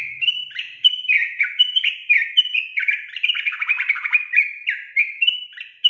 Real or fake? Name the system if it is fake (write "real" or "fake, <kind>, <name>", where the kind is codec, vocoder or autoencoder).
fake, vocoder, BigVGAN v2